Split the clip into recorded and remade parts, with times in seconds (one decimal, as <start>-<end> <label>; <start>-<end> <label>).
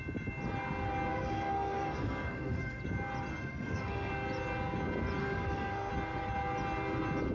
0.0-1.1 recorded; 1.1-2.8 remade; 2.8-3.3 recorded; 3.3-4.1 remade; 4.1-5.2 recorded; 5.2-5.9 remade; 5.9-7.3 recorded